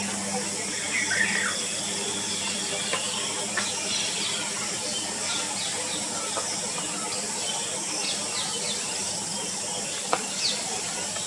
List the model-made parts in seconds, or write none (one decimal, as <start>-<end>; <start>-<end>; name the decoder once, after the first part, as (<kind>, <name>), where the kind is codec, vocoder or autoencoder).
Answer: none